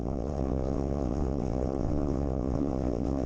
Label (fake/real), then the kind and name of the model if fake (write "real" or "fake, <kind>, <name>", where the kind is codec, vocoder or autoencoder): fake, vocoder, WaveNeXt